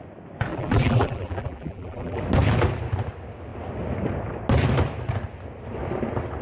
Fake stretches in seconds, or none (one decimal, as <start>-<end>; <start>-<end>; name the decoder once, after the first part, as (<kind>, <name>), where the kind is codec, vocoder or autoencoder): 0.5-2.2 (vocoder, BigVGAN v2)